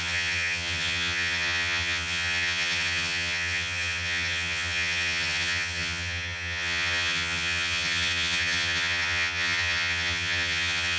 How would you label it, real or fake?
fake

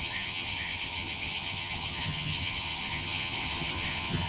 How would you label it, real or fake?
fake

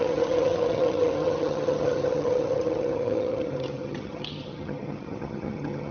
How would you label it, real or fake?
fake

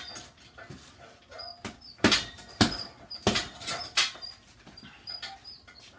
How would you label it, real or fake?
real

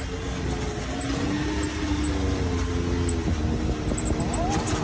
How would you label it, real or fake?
real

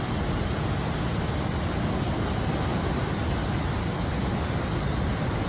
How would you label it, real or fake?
real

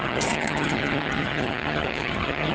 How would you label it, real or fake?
fake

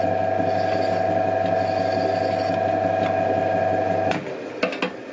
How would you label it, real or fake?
real